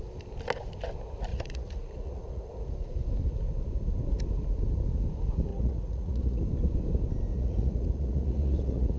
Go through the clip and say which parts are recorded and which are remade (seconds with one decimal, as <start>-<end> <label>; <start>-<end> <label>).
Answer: 0.0-1.3 recorded; 1.3-2.5 remade; 2.5-5.5 recorded; 5.5-6.4 remade; 6.4-7.3 recorded; 7.3-9.0 remade